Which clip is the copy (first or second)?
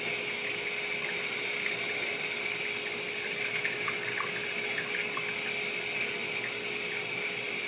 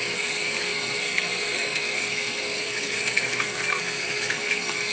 second